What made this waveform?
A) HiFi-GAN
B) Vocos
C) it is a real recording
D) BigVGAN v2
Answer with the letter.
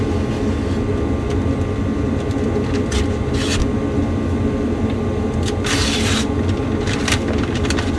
C